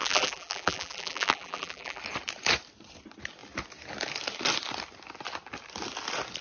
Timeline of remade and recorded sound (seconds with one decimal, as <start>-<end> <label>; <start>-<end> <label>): 0.0-2.0 remade; 2.0-6.4 recorded